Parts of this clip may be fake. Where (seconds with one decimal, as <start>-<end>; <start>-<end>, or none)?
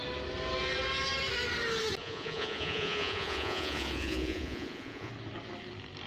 2.0-5.1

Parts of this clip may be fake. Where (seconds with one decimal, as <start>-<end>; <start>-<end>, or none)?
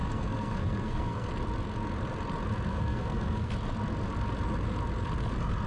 0.0-1.3; 2.7-3.5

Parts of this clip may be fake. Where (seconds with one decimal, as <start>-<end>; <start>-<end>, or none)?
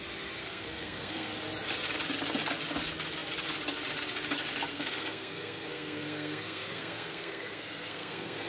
0.4-1.3; 4.7-8.5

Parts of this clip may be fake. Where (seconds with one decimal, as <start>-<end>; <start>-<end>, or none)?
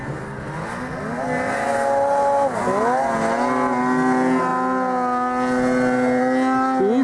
none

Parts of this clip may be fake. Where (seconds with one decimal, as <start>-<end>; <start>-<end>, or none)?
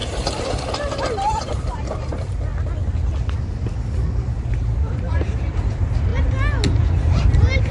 0.0-2.5; 4.9-6.1; 6.8-7.7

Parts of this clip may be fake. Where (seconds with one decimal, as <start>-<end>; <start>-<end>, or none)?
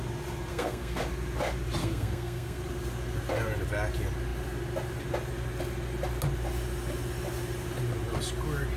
0.5-1.0; 1.8-2.6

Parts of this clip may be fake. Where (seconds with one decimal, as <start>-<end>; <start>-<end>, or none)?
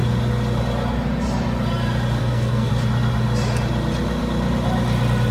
2.2-2.7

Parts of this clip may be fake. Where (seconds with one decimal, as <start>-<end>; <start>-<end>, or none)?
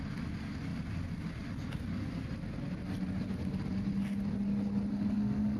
4.9-5.6